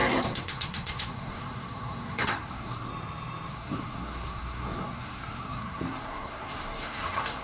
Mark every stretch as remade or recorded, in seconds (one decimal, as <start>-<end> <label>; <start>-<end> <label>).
0.0-2.9 remade; 2.9-3.5 recorded; 3.5-7.4 remade